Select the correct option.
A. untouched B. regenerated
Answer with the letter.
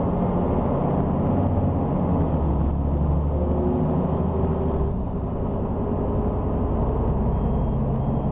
A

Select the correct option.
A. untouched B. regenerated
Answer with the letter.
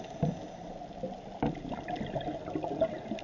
A